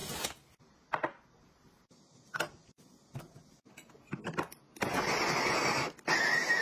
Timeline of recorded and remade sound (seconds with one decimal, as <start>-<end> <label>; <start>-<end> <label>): 0.0-6.6 recorded